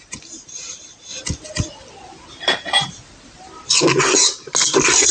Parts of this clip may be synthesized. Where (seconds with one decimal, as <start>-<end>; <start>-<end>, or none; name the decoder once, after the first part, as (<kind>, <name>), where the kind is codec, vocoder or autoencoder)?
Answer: none